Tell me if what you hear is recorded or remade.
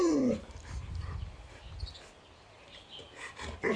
recorded